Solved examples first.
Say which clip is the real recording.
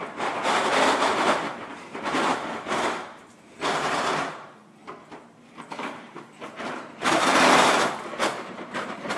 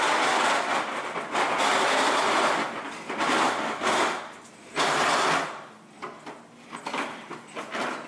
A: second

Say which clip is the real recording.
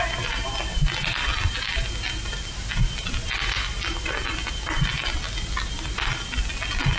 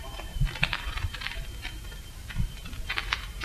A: first